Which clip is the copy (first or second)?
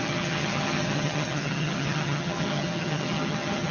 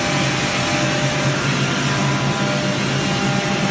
first